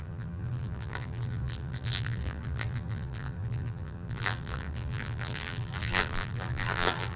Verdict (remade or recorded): remade